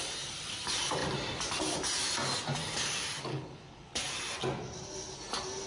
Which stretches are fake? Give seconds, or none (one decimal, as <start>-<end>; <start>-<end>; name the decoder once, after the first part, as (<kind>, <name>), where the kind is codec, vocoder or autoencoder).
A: 3.3-4.0 (codec, HILCodec)